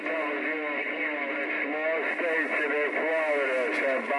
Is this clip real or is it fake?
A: real